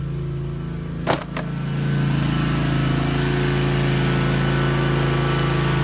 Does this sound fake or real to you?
real